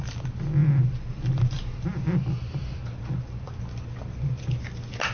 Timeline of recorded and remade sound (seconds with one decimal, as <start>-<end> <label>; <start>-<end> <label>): 0.0-0.6 recorded; 0.6-3.6 remade; 3.6-5.1 recorded